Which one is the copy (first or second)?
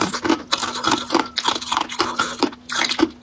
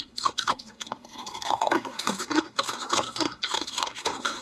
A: second